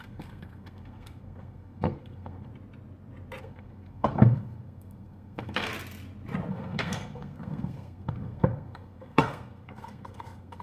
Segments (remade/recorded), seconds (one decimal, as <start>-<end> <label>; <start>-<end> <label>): 0.0-2.5 remade; 2.5-3.4 recorded; 3.4-5.7 remade; 5.7-6.5 recorded; 6.5-10.6 remade